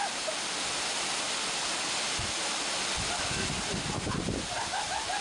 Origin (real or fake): real